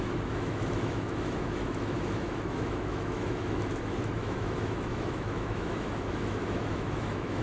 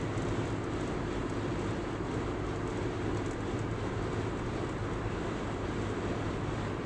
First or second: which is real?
second